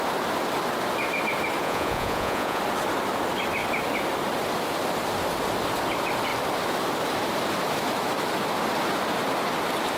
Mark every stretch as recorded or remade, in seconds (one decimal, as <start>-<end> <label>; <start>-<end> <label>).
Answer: 0.0-1.6 recorded; 1.6-2.6 remade; 2.6-10.0 recorded